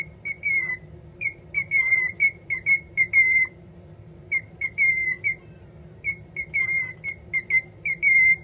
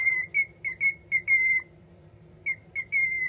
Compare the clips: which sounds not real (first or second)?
first